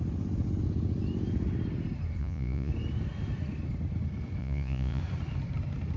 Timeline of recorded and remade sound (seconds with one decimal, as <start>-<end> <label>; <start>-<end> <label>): 0.0-2.2 recorded; 2.2-2.7 remade; 2.7-4.4 recorded; 4.4-5.0 remade; 5.0-6.0 recorded